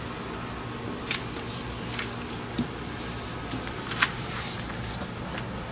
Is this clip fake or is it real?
real